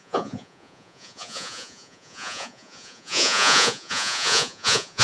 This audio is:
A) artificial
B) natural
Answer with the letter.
A